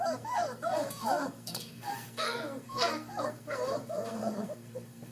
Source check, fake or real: fake